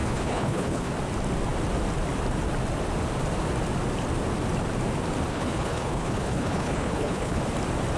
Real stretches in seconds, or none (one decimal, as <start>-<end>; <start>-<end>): 0.9-5.3; 7.4-8.0